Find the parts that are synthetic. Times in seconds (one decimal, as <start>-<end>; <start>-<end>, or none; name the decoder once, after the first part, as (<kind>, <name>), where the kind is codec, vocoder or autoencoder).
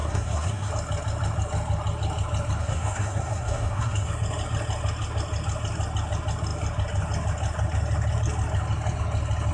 0.0-0.7 (codec, SNAC); 2.6-4.1